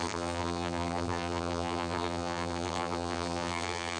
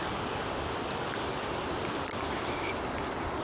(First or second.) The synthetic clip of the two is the first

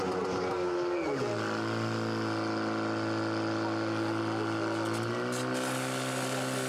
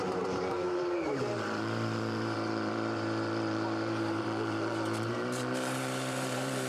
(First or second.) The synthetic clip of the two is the second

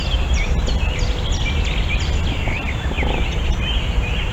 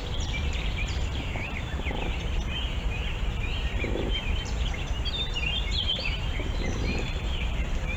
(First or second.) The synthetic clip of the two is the second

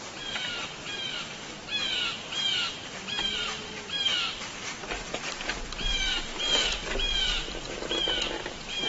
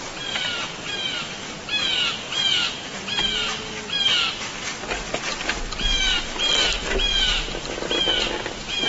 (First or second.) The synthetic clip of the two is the first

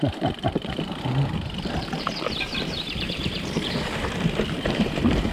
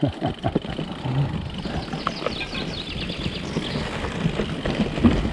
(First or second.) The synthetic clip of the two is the first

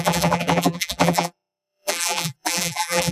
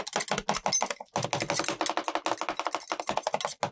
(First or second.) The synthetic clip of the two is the first